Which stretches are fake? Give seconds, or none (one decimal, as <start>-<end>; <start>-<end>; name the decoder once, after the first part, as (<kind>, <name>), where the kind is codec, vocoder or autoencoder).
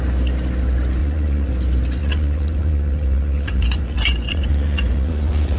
1.0-1.5 (vocoder, Vocos); 2.0-5.6